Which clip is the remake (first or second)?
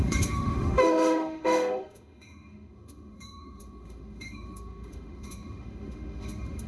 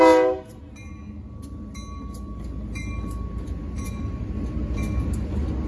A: first